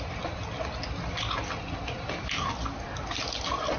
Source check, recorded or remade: recorded